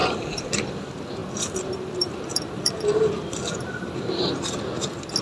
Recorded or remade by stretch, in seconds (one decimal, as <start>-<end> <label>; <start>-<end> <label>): 0.0-0.6 remade; 0.6-1.2 recorded; 1.2-4.0 remade; 4.0-5.2 recorded